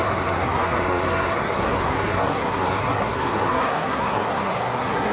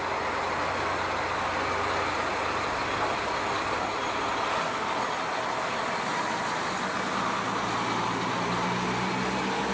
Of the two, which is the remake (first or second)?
first